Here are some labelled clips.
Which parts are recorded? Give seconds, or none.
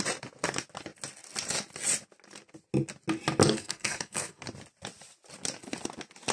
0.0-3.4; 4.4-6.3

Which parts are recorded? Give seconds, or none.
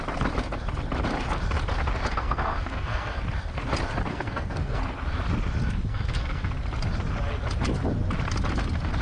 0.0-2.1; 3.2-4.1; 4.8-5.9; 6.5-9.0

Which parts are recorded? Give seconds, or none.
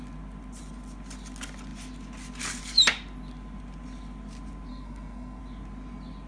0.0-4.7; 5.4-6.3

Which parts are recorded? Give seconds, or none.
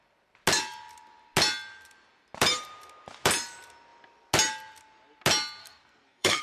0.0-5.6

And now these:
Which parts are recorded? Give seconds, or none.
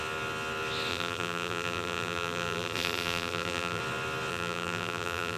0.0-0.9; 3.8-4.3